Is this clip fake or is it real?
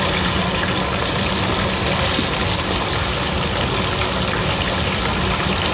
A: real